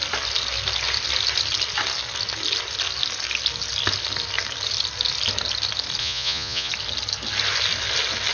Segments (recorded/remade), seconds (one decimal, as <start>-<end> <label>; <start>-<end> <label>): 0.0-6.0 recorded; 6.0-6.7 remade; 6.7-8.3 recorded

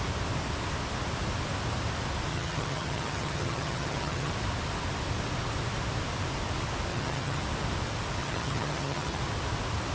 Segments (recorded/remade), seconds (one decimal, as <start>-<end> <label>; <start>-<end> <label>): 0.0-2.3 recorded; 2.3-4.3 remade; 4.3-6.9 recorded; 6.9-7.4 remade; 7.4-8.2 recorded; 8.2-9.2 remade; 9.2-9.9 recorded

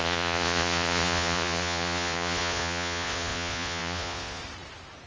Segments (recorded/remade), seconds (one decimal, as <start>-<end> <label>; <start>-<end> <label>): 0.0-4.4 remade; 4.4-5.1 recorded